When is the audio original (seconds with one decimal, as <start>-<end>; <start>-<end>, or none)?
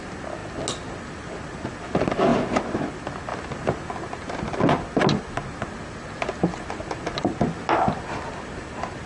0.0-9.1